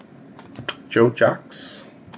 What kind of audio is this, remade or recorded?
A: recorded